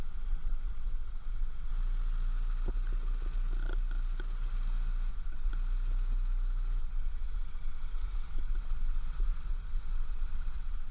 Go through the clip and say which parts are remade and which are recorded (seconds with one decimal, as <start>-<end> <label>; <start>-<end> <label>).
0.0-1.7 remade; 1.7-5.1 recorded; 5.1-5.5 remade; 5.5-6.8 recorded; 6.8-10.9 remade

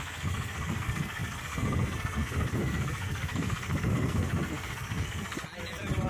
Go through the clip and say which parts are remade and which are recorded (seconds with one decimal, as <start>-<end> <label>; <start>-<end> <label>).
0.0-5.4 remade; 5.4-6.1 recorded

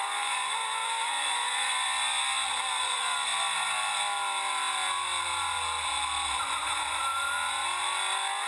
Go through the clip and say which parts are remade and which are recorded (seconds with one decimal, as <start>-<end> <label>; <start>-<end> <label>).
0.0-1.7 remade; 1.7-2.8 recorded; 2.8-3.3 remade; 3.3-6.4 recorded; 6.4-7.0 remade; 7.0-8.5 recorded